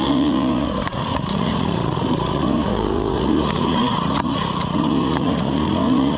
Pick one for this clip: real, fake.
fake